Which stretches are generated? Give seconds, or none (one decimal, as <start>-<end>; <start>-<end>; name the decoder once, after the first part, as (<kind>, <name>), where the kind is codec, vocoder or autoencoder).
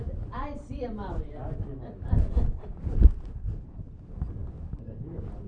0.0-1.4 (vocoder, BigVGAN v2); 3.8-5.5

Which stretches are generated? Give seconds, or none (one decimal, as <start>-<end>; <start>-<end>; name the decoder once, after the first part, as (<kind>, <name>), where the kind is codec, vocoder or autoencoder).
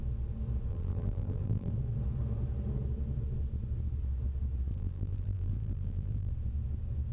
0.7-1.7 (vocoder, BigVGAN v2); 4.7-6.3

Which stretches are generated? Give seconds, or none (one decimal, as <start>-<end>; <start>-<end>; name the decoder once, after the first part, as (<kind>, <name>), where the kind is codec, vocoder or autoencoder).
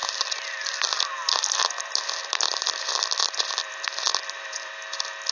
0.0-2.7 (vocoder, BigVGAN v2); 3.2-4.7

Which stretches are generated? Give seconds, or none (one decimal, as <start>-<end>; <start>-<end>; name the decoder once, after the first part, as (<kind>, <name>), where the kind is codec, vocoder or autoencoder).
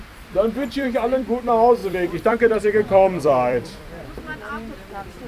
0.0-5.3 (vocoder, BigVGAN v2)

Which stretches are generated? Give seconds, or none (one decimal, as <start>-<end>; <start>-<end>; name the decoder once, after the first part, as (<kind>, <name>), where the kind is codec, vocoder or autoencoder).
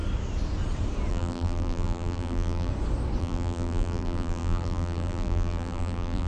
1.1-2.7 (vocoder, BigVGAN v2); 3.2-6.3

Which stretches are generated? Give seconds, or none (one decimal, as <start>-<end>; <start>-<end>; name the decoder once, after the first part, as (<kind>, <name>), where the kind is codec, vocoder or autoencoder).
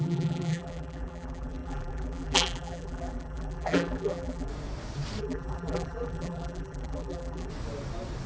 0.0-4.5 (vocoder, BigVGAN v2); 5.2-7.5